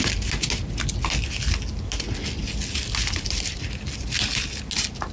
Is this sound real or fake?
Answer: real